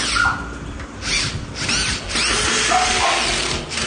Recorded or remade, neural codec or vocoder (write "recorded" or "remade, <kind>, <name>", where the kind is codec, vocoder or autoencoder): recorded